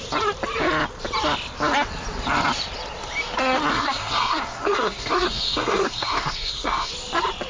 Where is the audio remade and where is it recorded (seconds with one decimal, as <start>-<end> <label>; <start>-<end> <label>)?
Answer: 0.0-3.7 recorded; 3.7-6.9 remade; 6.9-7.5 recorded